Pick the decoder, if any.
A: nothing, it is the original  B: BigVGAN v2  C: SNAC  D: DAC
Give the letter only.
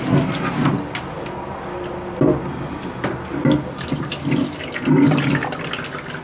A